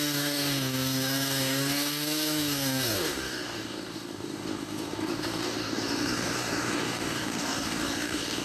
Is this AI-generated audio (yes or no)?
yes